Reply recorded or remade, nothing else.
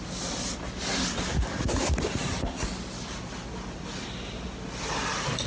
recorded